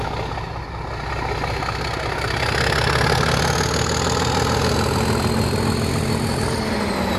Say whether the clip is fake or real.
real